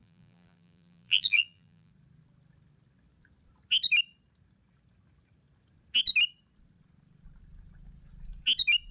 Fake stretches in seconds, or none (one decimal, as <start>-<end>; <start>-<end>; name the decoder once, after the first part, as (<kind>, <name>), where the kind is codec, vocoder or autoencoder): 0.0-1.9 (vocoder, BigVGAN v2)

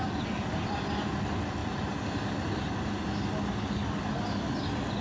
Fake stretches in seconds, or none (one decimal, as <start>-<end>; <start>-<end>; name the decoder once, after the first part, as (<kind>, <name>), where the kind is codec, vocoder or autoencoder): none

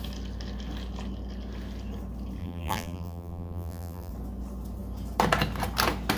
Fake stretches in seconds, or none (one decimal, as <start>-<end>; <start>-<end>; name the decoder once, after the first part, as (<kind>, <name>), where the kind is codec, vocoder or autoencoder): 2.4-4.1 (vocoder, BigVGAN v2)

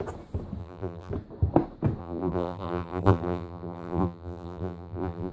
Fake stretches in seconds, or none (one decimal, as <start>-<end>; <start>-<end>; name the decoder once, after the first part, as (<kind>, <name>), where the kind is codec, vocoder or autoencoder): 0.6-1.1 (vocoder, BigVGAN v2); 2.0-5.3

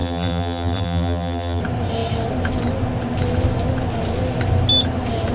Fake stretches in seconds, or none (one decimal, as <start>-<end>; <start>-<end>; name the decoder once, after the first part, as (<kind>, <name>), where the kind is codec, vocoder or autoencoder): 0.0-1.6 (vocoder, BigVGAN v2)

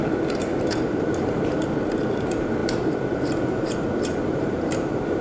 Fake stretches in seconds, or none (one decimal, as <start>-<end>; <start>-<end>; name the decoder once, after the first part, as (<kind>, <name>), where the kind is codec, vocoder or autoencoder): 0.6-1.6 (vocoder, BigVGAN v2); 2.2-5.2

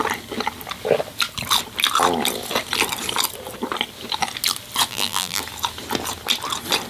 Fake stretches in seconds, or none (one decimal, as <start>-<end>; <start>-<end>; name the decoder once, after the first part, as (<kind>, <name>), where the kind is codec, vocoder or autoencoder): 4.9-5.4 (vocoder, BigVGAN v2)